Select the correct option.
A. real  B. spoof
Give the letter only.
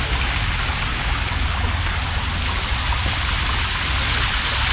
A